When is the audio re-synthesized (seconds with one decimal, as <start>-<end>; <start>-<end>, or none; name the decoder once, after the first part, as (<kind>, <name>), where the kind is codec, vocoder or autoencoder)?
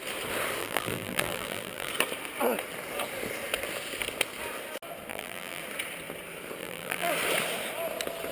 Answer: 0.6-1.9 (vocoder, BigVGAN v2); 5.1-5.6; 6.6-7.1